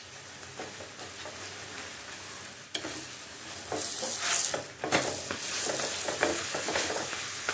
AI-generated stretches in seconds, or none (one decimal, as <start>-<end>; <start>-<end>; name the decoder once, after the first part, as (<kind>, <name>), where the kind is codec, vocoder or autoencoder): 6.3-7.5 (codec, HILCodec)